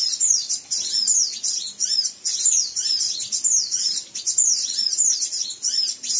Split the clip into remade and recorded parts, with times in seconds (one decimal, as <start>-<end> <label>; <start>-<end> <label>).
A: 0.0-6.2 recorded